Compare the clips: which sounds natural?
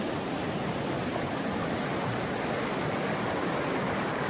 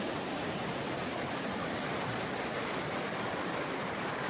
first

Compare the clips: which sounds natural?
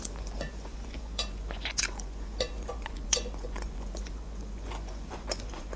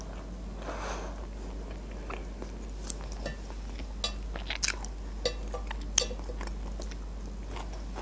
second